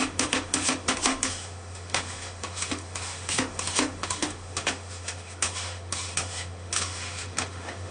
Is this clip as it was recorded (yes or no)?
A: no